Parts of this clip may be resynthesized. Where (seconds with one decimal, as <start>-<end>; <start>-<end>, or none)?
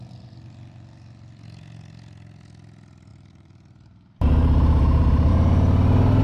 3.1-5.3